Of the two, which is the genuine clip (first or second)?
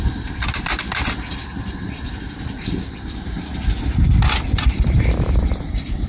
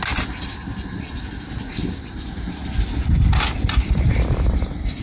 second